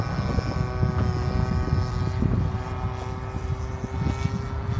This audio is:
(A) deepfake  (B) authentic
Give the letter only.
B